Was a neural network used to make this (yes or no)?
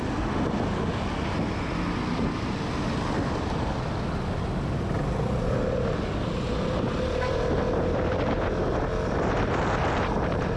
no